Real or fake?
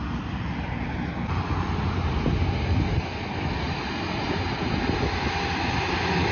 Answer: real